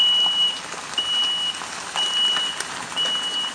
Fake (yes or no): no